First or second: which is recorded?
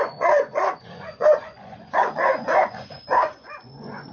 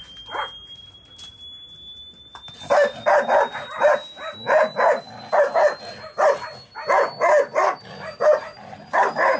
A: second